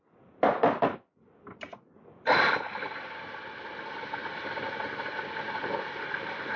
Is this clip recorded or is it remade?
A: remade